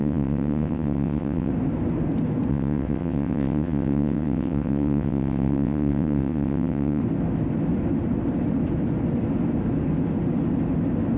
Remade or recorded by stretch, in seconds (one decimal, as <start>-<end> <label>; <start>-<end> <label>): 0.0-1.5 remade; 1.5-2.5 recorded; 2.5-7.0 remade; 7.0-11.2 recorded